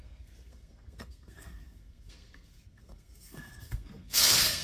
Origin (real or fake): fake